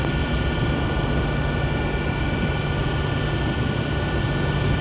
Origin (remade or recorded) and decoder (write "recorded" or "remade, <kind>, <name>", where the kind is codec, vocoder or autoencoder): recorded